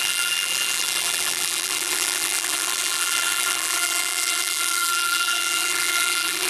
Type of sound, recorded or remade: remade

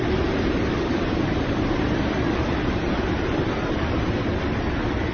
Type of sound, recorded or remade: remade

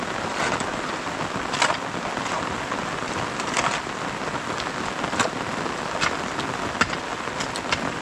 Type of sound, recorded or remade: recorded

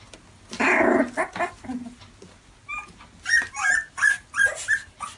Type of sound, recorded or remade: recorded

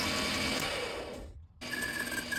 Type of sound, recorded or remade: recorded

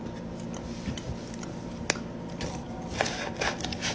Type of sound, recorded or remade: recorded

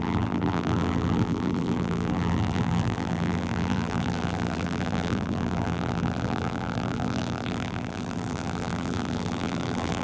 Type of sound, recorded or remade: remade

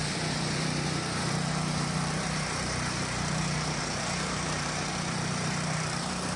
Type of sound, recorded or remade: remade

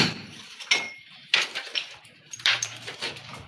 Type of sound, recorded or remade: remade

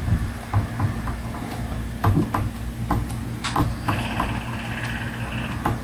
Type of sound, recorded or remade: recorded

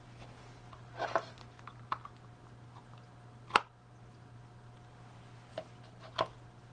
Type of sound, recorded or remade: recorded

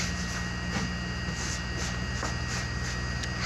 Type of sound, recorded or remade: recorded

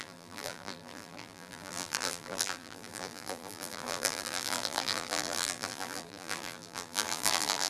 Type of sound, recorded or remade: remade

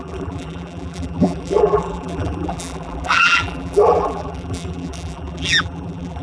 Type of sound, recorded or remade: remade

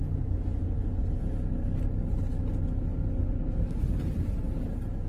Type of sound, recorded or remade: recorded